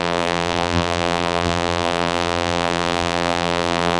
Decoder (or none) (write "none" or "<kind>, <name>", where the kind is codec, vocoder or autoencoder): vocoder, BigVGAN v2